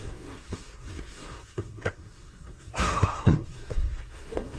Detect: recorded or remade remade